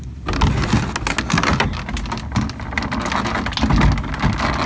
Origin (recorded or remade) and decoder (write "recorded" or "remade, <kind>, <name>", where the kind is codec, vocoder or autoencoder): recorded